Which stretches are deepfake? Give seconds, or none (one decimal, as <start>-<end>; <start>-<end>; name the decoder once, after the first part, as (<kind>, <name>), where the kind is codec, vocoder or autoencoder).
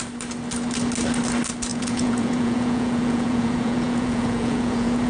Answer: 1.7-5.1 (vocoder, Vocos)